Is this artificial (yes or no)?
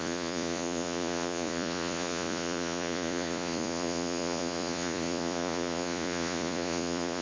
yes